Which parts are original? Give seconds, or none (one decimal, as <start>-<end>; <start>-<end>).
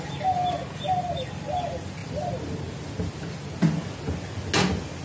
0.0-5.0